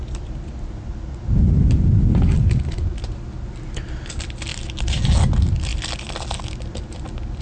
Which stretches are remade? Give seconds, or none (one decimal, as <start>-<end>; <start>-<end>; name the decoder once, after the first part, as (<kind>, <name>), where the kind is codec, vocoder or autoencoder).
4.5-5.0 (vocoder, BigVGAN v2)